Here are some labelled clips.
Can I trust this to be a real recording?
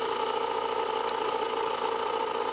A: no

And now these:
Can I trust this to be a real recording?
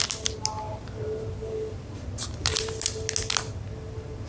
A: yes